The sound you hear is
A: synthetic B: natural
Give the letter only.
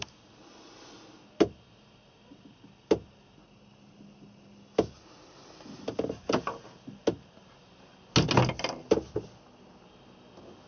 B